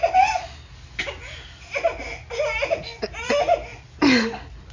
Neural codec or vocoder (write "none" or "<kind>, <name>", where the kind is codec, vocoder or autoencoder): none